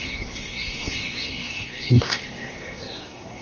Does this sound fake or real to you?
fake